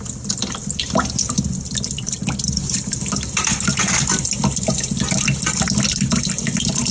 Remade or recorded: recorded